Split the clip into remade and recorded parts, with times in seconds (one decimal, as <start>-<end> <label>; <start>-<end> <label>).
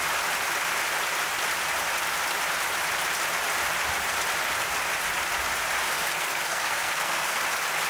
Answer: 0.0-5.9 recorded; 5.9-7.4 remade; 7.4-7.9 recorded